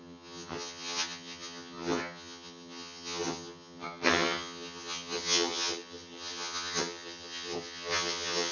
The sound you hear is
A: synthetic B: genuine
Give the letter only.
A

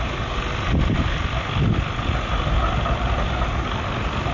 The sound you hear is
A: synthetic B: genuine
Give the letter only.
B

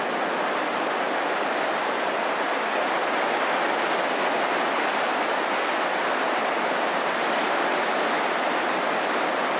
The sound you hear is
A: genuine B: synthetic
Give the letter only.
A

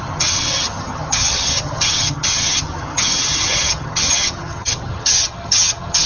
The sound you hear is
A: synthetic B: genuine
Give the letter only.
A